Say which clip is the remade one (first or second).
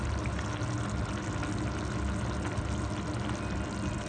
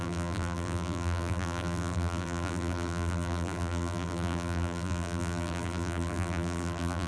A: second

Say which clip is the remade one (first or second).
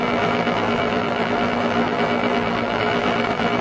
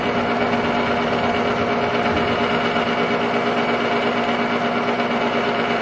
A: first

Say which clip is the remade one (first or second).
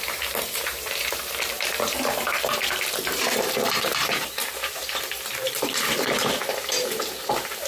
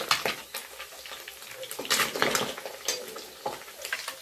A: first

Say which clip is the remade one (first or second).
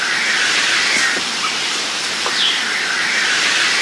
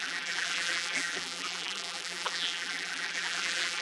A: second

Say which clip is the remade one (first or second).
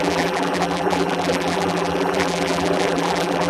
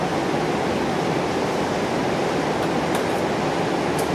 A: first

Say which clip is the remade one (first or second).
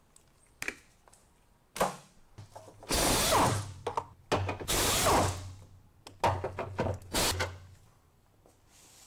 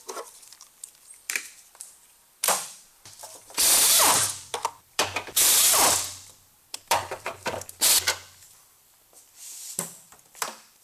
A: second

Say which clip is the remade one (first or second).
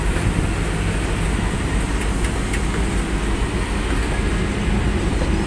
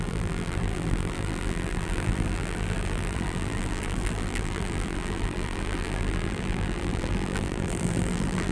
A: second